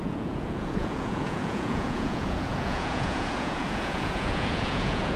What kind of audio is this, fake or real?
fake